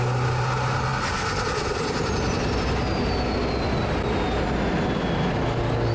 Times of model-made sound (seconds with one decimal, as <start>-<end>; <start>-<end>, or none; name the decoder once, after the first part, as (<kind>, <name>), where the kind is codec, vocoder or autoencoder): none